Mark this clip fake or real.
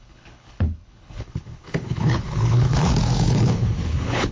fake